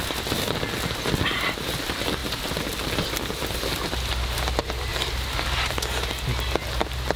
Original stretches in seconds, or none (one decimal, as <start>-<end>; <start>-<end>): 0.0-7.2